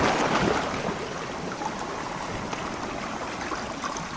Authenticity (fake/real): real